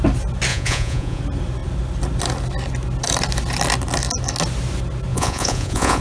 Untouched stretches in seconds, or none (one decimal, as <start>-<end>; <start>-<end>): 0.0-0.5; 1.2-5.1